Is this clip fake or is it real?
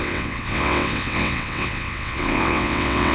fake